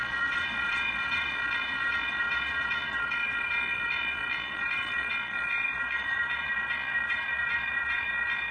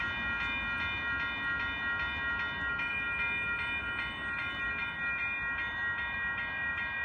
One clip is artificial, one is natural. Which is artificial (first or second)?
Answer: first